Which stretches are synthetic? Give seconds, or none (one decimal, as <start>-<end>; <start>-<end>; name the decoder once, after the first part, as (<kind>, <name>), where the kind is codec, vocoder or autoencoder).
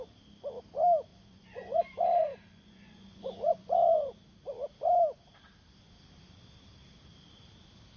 1.1-4.2 (vocoder, Vocos)